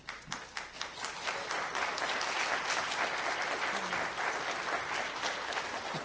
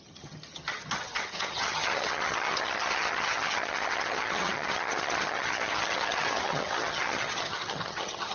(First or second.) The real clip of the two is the first